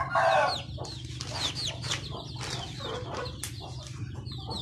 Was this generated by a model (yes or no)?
no